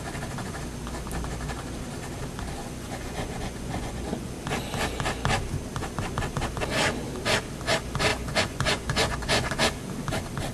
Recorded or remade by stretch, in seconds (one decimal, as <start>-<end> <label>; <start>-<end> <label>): 0.0-2.6 recorded; 2.6-4.3 remade; 4.3-8.1 recorded; 8.1-9.5 remade; 9.5-10.5 recorded